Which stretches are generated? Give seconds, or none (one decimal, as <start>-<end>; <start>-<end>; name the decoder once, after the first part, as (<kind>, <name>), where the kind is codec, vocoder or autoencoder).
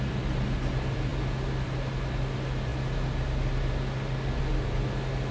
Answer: none